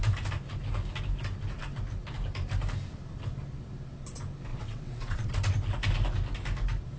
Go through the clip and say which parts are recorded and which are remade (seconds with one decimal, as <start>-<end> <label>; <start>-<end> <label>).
0.0-4.5 recorded; 4.5-5.3 remade; 5.3-7.0 recorded